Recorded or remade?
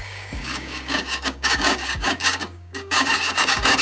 remade